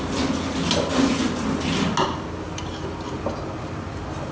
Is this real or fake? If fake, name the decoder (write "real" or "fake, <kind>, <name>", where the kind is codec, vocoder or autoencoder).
real